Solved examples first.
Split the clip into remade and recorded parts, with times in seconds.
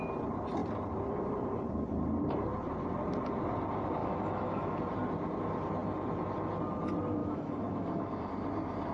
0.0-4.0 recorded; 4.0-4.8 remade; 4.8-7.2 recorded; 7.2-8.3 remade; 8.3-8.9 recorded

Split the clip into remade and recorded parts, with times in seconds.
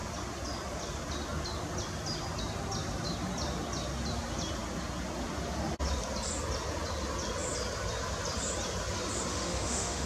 0.0-9.3 recorded; 9.3-10.1 remade